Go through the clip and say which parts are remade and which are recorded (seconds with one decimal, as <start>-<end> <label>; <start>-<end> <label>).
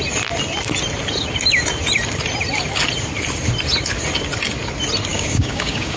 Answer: 0.0-5.1 recorded; 5.1-6.0 remade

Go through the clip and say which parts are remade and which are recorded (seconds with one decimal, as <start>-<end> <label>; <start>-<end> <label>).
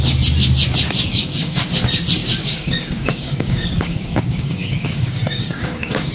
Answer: 0.0-1.1 recorded; 1.1-1.6 remade; 1.6-2.2 recorded; 2.2-6.1 remade